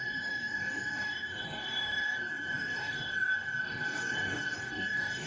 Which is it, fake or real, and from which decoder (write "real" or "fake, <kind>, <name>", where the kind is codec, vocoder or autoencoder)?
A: fake, codec, DAC